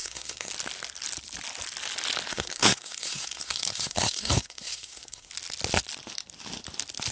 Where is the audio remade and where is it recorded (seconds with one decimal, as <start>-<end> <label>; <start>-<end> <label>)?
0.0-0.5 remade; 0.5-2.3 recorded; 2.3-5.3 remade; 5.3-7.1 recorded